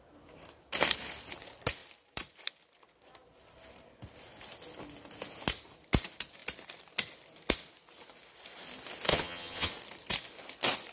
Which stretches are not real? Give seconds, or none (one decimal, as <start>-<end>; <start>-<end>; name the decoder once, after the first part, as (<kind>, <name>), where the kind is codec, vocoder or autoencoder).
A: 9.1-9.7 (vocoder, HiFi-GAN)